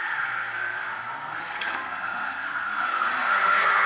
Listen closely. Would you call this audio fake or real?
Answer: fake